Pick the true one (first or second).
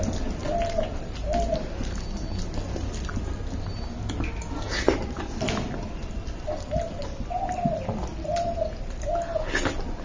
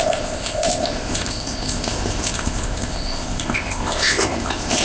first